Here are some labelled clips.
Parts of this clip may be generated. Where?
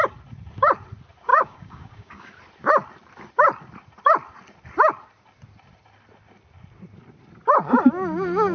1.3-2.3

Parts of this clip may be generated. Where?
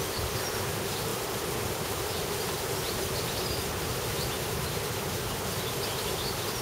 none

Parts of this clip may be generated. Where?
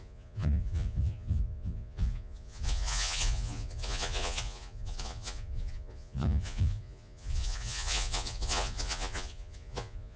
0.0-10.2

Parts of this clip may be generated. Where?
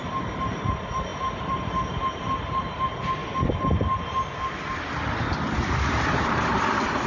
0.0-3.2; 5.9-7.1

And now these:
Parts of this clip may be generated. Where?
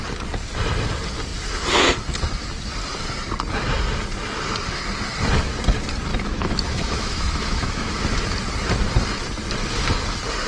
6.1-8.0